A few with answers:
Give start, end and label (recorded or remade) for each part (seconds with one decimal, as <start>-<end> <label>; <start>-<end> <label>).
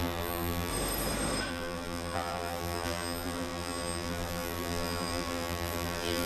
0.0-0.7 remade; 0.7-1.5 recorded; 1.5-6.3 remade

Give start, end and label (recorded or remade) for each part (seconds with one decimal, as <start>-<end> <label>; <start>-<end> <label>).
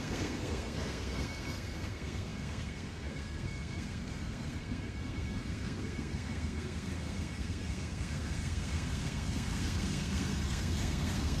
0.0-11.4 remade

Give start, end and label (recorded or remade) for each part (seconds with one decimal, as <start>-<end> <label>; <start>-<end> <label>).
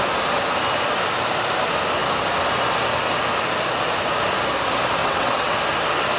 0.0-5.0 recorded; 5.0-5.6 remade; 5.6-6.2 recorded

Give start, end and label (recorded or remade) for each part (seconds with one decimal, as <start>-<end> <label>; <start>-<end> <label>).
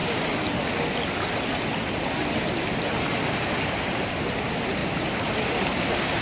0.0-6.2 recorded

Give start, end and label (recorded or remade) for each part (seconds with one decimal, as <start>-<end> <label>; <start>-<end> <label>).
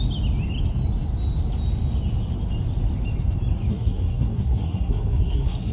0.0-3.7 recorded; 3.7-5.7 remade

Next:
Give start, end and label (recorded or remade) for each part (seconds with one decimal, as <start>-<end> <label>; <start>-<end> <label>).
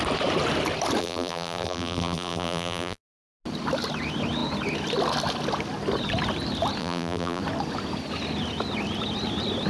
0.0-1.0 recorded; 1.0-3.0 remade; 3.0-6.8 recorded; 6.8-7.4 remade; 7.4-9.7 recorded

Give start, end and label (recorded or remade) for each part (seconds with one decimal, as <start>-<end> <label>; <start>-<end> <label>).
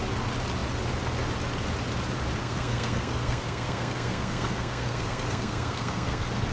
0.0-2.4 recorded; 2.4-6.5 remade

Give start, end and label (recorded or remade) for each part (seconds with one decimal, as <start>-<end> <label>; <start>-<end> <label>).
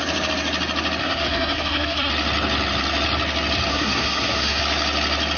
0.0-1.0 recorded; 1.0-2.1 remade; 2.1-3.7 recorded; 3.7-4.6 remade; 4.6-5.4 recorded